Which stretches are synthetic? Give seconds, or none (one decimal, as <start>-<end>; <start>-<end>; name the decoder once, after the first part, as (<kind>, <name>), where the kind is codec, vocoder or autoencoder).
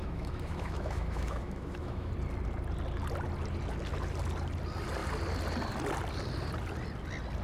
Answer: 0.0-2.1 (autoencoder, DAC-VAE)